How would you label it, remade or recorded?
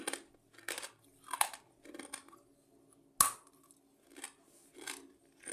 recorded